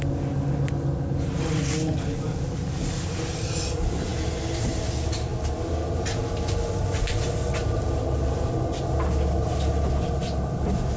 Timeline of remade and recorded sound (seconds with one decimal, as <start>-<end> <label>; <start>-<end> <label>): 0.0-11.0 recorded